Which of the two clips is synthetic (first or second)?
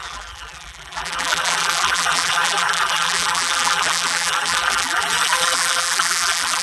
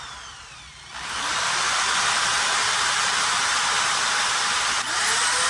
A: first